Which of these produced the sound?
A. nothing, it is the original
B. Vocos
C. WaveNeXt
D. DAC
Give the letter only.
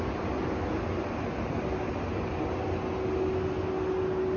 A